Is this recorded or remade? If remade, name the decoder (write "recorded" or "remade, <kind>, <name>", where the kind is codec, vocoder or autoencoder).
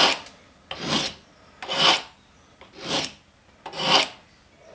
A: recorded